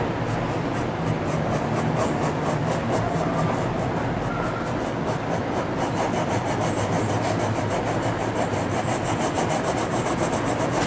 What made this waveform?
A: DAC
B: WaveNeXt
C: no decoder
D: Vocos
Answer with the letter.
C